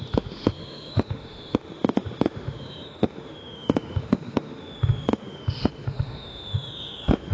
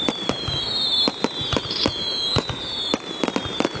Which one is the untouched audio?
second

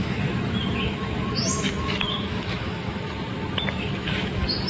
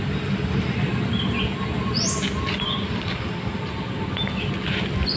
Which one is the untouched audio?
second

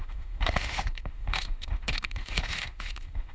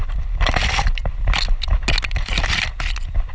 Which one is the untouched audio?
second